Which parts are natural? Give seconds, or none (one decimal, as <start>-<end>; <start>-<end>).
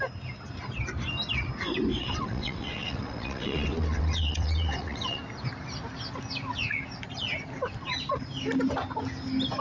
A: 0.0-2.0; 5.2-9.6